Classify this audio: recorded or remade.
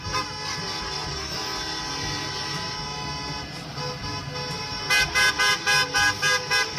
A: recorded